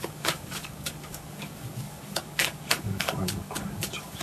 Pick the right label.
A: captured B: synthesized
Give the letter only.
B